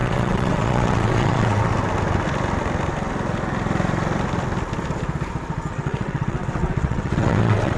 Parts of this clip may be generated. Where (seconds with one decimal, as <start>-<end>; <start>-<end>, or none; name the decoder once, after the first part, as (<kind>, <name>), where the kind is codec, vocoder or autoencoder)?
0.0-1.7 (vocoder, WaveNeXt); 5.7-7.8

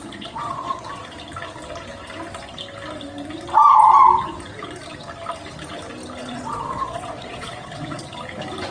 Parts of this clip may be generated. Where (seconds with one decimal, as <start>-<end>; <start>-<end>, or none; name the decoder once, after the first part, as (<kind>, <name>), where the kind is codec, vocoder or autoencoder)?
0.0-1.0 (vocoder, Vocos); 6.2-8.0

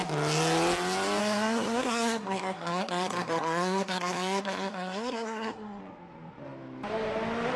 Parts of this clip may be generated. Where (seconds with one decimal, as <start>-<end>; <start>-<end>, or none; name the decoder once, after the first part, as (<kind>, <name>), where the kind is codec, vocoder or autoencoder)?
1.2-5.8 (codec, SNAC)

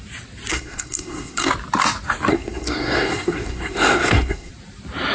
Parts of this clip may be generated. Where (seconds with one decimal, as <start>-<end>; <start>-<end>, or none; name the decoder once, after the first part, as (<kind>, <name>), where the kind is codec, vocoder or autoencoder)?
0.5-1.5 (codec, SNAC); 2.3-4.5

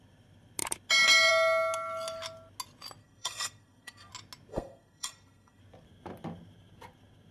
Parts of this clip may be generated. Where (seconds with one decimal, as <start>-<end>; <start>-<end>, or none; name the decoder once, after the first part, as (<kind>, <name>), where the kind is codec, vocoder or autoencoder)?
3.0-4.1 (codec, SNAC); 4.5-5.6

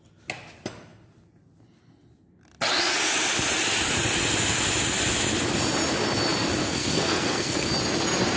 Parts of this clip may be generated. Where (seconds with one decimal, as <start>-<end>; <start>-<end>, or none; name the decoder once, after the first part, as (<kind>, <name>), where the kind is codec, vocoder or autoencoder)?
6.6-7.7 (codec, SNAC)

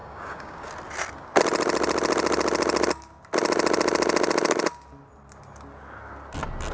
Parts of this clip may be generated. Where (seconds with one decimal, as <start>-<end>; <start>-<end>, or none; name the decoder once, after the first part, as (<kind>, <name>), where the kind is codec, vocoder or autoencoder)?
0.0-0.7 (codec, DAC)

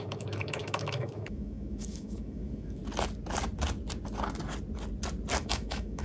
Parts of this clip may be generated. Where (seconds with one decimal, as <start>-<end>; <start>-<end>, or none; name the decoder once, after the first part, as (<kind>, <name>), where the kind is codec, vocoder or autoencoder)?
0.0-2.8 (autoencoder, DAC-VAE); 5.4-6.0